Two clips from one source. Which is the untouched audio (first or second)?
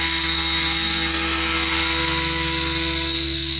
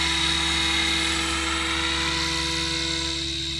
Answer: second